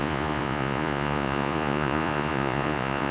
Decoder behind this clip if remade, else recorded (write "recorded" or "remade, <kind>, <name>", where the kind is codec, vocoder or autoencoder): remade, vocoder, Vocos